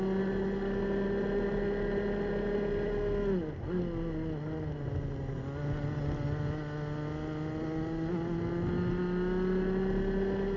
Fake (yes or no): no